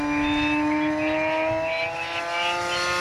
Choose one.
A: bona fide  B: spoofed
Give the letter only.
A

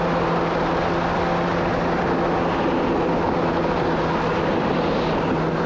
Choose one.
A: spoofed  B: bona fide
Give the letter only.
B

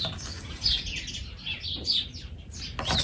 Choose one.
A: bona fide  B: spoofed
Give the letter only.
A